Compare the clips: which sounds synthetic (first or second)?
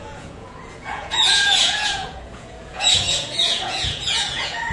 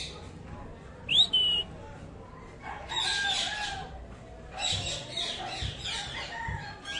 first